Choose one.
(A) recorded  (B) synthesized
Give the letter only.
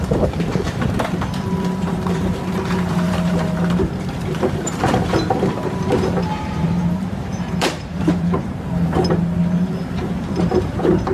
B